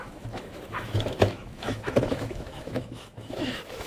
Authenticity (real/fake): fake